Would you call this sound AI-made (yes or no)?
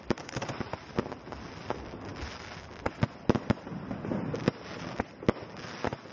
no